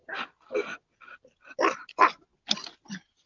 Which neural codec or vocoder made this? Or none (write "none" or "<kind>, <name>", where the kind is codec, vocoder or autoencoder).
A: none